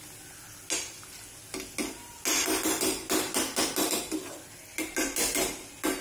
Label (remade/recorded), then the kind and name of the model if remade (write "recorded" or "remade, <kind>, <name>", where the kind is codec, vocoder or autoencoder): recorded